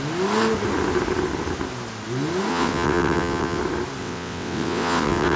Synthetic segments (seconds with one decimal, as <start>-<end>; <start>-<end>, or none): 2.5-3.6; 4.0-5.4